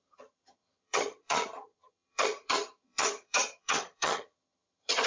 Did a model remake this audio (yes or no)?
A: yes